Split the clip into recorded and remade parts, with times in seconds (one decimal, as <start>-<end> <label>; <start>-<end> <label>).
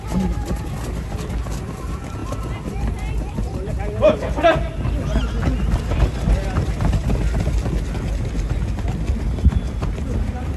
0.0-10.6 recorded